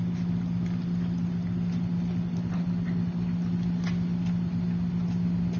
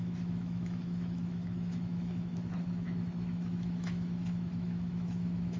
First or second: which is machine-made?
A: second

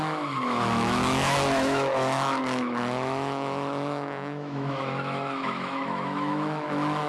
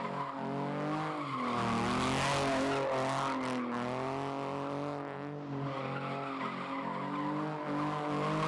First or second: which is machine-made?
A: first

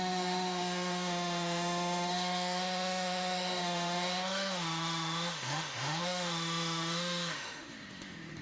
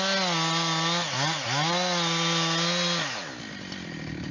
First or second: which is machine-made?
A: first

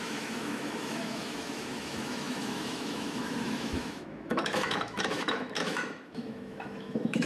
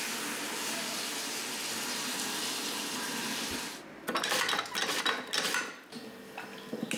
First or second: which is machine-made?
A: first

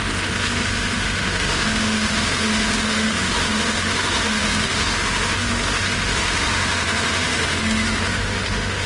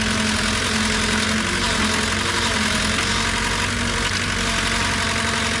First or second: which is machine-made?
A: first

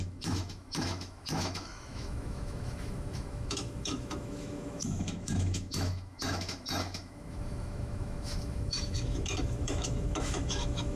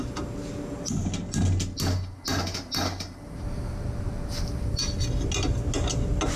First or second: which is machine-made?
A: first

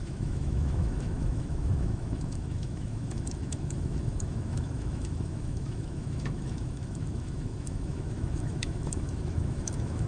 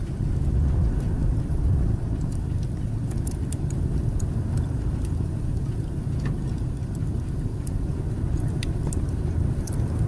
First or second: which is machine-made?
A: first